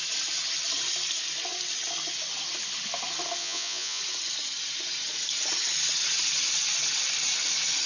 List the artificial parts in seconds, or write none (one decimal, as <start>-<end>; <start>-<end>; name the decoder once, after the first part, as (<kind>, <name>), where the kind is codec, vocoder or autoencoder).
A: 3.4-4.0 (vocoder, Vocos)